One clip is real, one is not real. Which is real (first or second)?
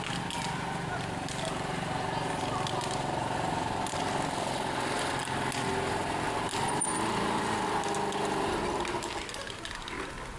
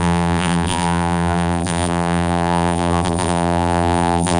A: first